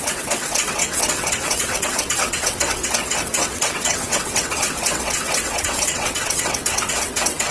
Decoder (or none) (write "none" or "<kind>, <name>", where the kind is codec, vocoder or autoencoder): vocoder, WaveNeXt